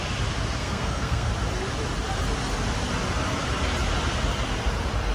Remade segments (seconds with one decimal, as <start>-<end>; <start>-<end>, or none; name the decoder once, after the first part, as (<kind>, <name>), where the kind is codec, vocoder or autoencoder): 0.6-1.3 (codec, SNAC)